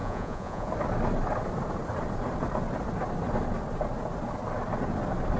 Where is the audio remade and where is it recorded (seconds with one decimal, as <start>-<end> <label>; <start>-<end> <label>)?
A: 0.0-0.7 remade; 0.7-5.4 recorded